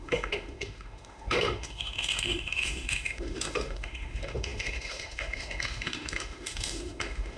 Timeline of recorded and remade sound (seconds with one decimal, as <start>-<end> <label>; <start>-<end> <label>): 0.0-7.4 remade